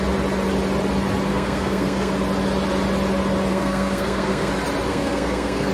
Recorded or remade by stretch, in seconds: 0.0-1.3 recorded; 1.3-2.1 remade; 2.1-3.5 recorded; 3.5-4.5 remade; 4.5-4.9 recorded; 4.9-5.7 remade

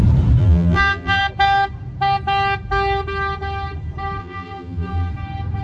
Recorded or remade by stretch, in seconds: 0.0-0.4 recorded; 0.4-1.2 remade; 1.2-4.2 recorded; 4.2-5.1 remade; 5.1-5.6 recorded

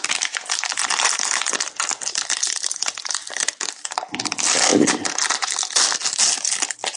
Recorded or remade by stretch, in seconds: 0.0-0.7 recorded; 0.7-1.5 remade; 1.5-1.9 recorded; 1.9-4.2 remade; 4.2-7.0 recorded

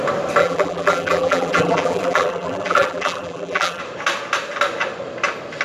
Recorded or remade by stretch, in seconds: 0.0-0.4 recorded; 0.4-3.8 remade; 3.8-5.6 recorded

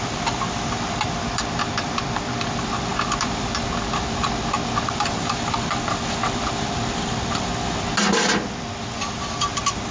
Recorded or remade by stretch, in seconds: 0.0-7.5 remade; 7.5-8.8 recorded; 8.8-9.9 remade

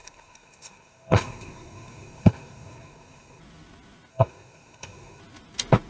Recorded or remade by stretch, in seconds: 0.0-3.4 remade; 3.4-4.1 recorded; 4.1-5.2 remade; 5.2-5.9 recorded

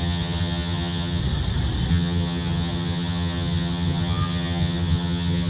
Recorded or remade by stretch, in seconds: 0.0-1.2 remade; 1.2-1.9 recorded; 1.9-5.5 remade